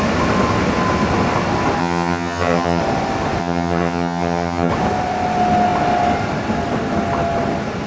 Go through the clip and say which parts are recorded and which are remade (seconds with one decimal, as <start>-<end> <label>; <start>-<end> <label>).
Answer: 0.0-1.8 recorded; 1.8-2.8 remade; 2.8-3.4 recorded; 3.4-4.7 remade; 4.7-7.9 recorded

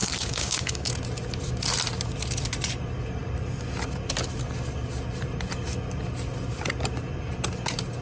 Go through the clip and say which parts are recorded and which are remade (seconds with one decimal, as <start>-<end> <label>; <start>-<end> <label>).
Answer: 0.0-0.9 remade; 0.9-8.0 recorded

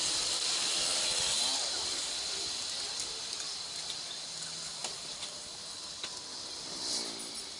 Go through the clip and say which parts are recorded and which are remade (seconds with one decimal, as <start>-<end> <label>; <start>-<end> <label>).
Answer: 0.0-7.6 recorded

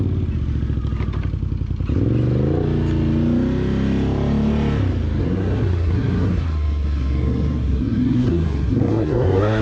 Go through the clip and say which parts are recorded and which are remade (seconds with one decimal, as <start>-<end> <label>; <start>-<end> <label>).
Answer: 0.0-5.2 recorded; 5.2-9.6 remade

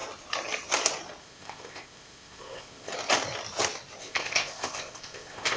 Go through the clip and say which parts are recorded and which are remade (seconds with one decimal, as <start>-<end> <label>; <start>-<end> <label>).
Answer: 0.0-1.2 recorded; 1.2-2.9 remade; 2.9-4.0 recorded; 4.0-5.6 remade

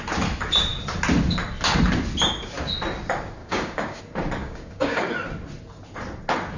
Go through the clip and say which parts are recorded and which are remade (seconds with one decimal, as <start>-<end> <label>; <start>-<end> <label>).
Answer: 0.0-3.4 recorded; 3.4-4.0 remade; 4.0-4.4 recorded; 4.4-5.1 remade; 5.1-6.6 recorded

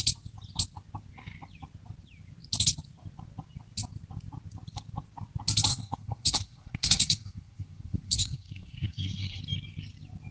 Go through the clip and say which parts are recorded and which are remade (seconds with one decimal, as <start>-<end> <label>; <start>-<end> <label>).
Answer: 0.0-5.7 recorded; 5.7-9.4 remade; 9.4-10.3 recorded

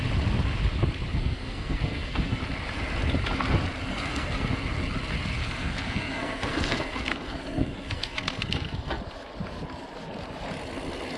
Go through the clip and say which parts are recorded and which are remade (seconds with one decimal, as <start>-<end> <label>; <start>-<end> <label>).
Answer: 0.0-1.1 recorded; 1.1-2.4 remade; 2.4-3.9 recorded; 3.9-4.5 remade; 4.5-5.4 recorded; 5.4-9.0 remade; 9.0-11.2 recorded